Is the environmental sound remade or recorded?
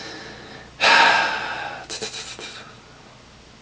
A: recorded